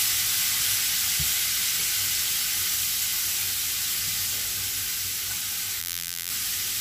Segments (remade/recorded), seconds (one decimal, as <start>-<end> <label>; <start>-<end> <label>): 0.0-5.8 recorded; 5.8-6.3 remade; 6.3-6.8 recorded